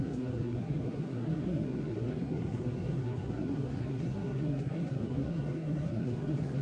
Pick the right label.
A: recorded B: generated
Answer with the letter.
B